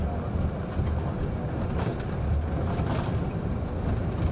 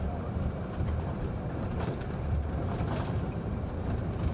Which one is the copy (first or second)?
second